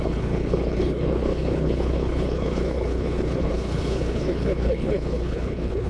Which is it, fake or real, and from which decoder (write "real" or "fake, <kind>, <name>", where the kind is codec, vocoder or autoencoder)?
fake, codec, HILCodec